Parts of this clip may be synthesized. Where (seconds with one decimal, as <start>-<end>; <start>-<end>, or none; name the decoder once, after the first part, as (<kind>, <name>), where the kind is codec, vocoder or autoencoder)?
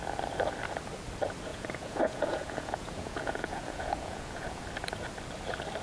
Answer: 1.5-4.6 (vocoder, Vocos)